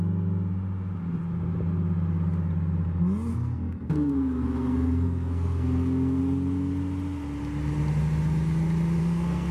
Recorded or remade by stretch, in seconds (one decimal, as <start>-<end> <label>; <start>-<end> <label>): 0.0-3.3 recorded; 3.3-6.2 remade; 6.2-9.0 recorded; 9.0-9.5 remade